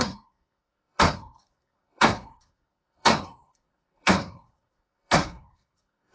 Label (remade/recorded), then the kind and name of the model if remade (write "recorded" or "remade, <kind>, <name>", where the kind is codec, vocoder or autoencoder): remade, codec, SNAC